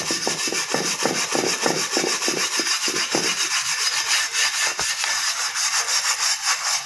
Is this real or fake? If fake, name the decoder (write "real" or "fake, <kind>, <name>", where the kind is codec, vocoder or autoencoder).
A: real